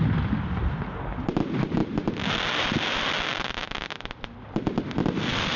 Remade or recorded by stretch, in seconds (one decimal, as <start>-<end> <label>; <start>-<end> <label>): 0.0-5.6 recorded